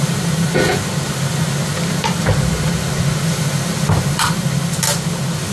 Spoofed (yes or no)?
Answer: no